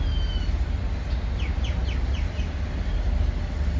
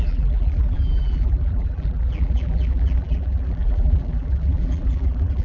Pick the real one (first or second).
first